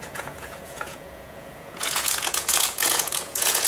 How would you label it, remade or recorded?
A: remade